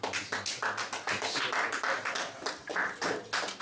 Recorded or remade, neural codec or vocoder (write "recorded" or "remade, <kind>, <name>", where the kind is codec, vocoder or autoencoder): recorded